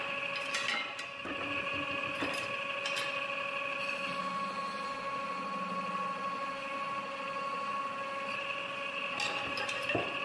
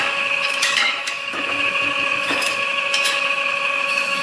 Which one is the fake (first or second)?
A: second